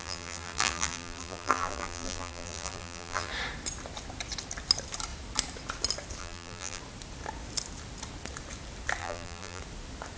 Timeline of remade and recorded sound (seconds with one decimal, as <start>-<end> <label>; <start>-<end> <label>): 0.0-3.3 remade; 3.3-6.2 recorded; 6.2-6.8 remade; 6.8-9.0 recorded; 9.0-9.6 remade; 9.6-10.2 recorded